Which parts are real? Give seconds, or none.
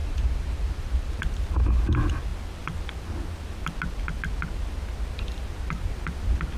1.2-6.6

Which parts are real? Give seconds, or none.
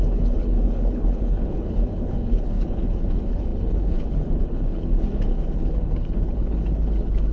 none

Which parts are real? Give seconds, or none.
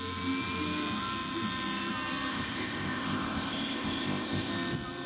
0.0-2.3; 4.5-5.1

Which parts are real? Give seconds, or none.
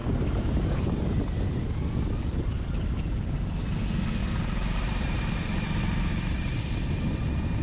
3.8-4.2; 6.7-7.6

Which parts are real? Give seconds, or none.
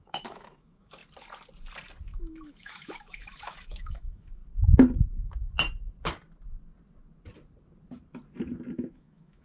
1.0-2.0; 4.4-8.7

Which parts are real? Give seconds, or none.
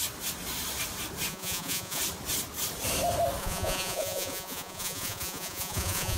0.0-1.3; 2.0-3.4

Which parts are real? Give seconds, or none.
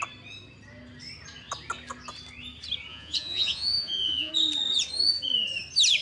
0.0-2.9; 4.3-6.0